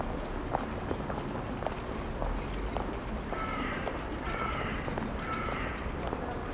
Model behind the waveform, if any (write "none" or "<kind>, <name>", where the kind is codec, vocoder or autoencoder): none